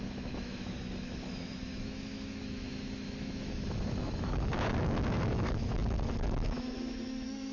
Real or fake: fake